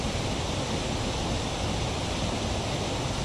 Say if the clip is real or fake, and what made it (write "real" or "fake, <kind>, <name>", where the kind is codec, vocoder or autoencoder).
real